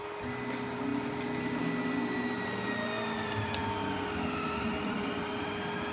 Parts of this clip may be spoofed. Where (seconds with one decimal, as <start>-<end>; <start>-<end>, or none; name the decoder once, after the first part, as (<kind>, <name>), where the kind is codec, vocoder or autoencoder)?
none